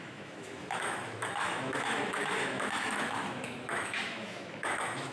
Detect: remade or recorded remade